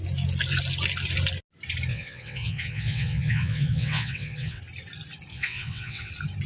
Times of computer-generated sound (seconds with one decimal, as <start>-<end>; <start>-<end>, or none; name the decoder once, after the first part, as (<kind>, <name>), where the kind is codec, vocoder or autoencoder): 1.9-4.6 (vocoder, WaveNeXt); 5.3-6.1